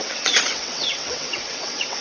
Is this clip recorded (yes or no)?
no